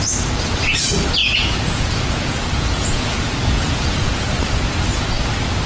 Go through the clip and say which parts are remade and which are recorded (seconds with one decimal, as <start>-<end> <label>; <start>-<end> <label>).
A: 0.0-1.2 recorded; 1.2-4.6 remade; 4.6-5.7 recorded